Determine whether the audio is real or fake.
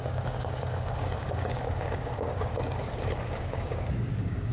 fake